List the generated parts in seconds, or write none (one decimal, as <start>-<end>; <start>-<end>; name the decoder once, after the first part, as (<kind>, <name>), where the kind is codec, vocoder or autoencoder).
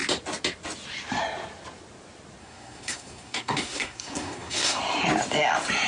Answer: 2.4-4.8 (codec, SNAC)